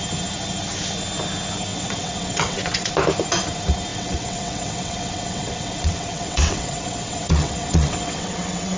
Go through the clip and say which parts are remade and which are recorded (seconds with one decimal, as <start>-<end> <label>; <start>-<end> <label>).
0.0-1.7 recorded; 1.7-2.9 remade; 2.9-3.9 recorded; 3.9-8.8 remade